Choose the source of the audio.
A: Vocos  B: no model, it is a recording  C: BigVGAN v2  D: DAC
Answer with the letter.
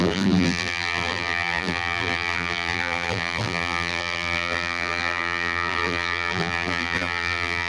C